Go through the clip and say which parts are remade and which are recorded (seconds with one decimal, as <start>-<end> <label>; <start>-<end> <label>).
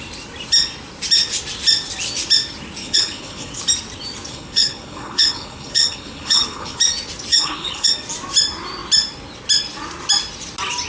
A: 0.0-2.8 recorded; 2.8-3.5 remade; 3.5-4.3 recorded; 4.3-6.8 remade; 6.8-7.3 recorded; 7.3-7.9 remade; 7.9-10.9 recorded